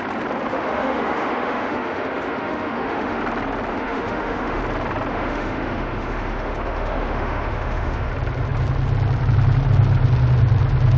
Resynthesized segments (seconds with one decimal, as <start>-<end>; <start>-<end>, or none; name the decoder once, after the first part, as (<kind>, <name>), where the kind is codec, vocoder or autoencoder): 0.5-3.2 (autoencoder, DAC-VAE); 3.7-4.6; 5.1-8.1